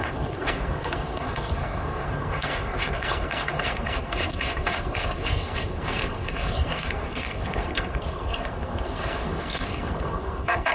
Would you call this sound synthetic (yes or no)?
yes